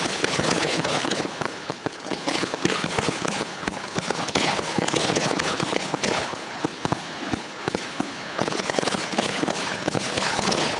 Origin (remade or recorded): remade